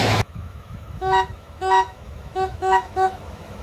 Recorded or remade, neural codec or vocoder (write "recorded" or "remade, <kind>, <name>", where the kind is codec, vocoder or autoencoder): remade, autoencoder, DAC-VAE